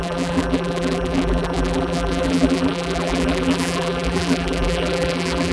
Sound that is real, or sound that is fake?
fake